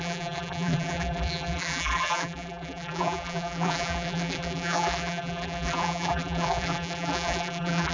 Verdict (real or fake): fake